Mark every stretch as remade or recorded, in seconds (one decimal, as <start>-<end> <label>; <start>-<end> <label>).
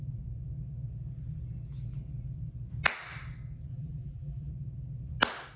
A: 0.0-3.7 recorded; 3.7-4.5 remade; 4.5-5.6 recorded